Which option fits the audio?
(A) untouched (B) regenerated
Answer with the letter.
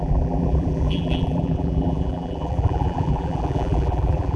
B